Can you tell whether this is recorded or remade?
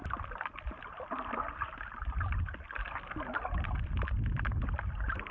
recorded